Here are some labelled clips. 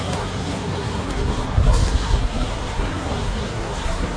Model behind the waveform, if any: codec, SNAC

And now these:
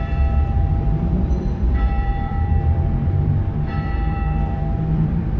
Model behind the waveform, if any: vocoder, BigVGAN v2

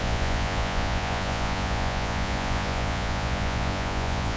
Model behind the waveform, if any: vocoder, Vocos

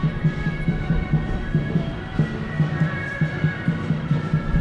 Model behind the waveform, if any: vocoder, BigVGAN v2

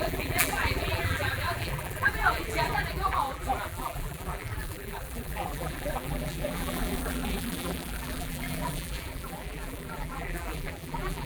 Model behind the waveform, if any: vocoder, BigVGAN v2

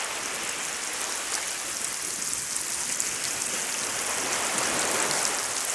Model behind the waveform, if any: none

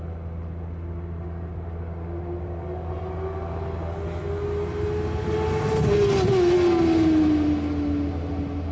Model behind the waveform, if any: none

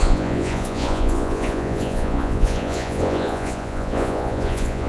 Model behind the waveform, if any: vocoder, Vocos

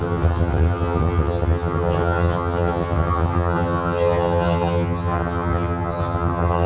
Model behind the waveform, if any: vocoder, HiFi-GAN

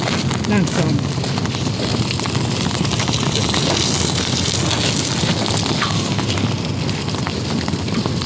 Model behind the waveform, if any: none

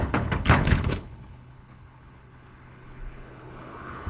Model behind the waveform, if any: codec, HILCodec